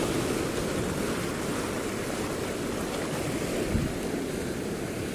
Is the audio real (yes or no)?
yes